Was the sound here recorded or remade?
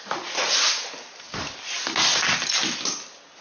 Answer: recorded